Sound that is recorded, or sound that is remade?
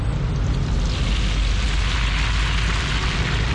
recorded